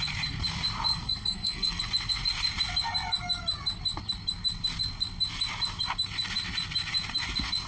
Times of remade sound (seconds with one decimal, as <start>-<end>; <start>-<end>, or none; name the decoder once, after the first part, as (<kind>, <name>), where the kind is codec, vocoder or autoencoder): 0.9-1.8 (codec, SNAC)